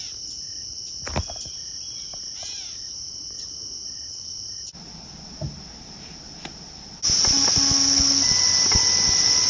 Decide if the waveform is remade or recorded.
recorded